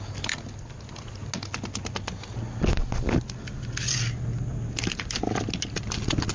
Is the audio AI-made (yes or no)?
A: no